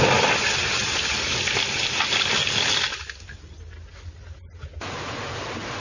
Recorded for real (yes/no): yes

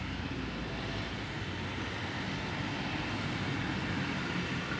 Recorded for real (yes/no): yes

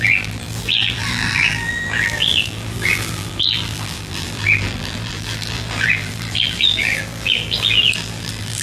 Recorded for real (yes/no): no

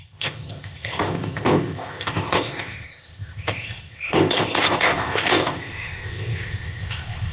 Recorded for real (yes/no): no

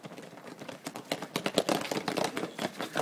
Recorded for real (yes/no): yes